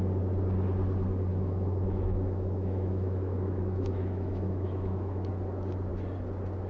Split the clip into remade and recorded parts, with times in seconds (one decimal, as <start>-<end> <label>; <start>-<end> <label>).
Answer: 0.0-1.3 recorded; 1.3-5.3 remade; 5.3-6.7 recorded